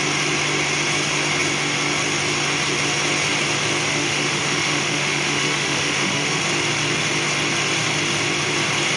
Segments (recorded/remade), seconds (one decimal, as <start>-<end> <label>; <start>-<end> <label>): 0.0-3.9 recorded; 3.9-6.4 remade; 6.4-9.0 recorded